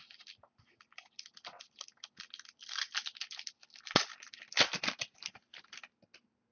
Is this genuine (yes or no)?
yes